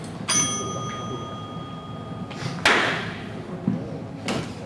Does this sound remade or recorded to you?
recorded